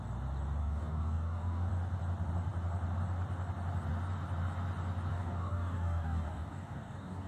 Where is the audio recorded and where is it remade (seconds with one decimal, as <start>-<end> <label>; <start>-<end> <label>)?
0.0-0.6 recorded; 0.6-1.7 remade; 1.7-5.1 recorded; 5.1-7.3 remade